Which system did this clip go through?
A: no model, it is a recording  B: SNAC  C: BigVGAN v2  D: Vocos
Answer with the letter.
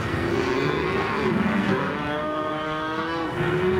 B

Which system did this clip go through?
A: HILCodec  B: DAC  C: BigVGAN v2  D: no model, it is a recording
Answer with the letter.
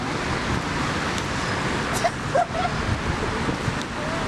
D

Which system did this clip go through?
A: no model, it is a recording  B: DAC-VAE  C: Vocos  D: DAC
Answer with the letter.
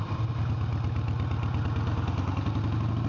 A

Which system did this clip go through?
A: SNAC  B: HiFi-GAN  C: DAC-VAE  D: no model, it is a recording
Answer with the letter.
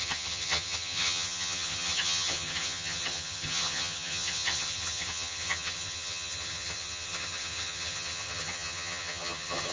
B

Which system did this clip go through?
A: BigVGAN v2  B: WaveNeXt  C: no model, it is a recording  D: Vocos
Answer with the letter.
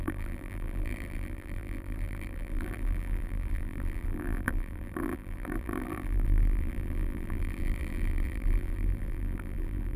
A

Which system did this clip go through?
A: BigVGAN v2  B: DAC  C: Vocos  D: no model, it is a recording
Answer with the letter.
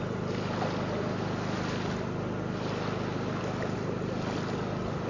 D